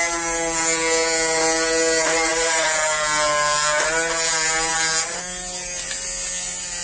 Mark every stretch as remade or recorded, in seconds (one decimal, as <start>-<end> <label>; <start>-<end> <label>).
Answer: 0.0-6.8 recorded